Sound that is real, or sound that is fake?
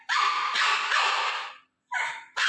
real